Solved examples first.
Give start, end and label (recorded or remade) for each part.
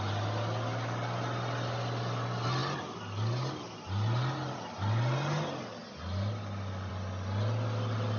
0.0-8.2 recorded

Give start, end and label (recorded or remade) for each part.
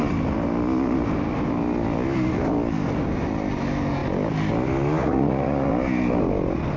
0.0-5.0 recorded; 5.0-5.7 remade; 5.7-6.8 recorded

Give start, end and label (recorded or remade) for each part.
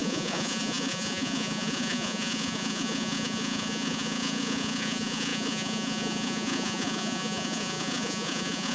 0.0-8.7 remade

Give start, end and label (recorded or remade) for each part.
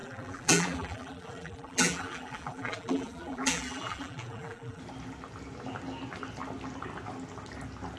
0.0-4.8 remade; 4.8-8.0 recorded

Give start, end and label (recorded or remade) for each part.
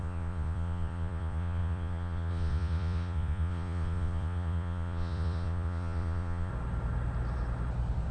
0.0-6.5 remade; 6.5-8.1 recorded